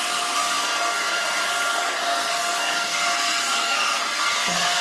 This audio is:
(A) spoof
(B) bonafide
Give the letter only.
A